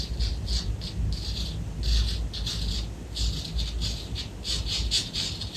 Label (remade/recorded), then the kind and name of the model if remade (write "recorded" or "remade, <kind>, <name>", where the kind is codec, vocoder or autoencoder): recorded